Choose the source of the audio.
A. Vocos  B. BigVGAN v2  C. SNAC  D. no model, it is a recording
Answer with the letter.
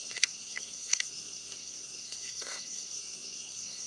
C